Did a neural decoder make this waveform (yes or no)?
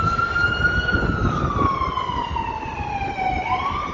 no